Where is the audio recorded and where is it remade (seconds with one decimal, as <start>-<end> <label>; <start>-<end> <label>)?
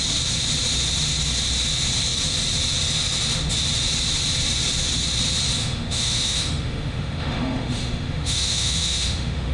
0.0-5.6 recorded; 5.6-9.5 remade